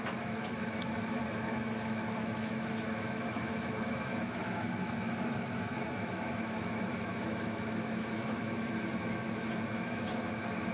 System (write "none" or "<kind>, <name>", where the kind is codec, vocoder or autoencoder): autoencoder, DAC-VAE